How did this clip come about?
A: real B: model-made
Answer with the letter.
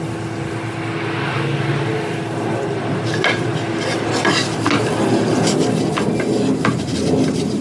A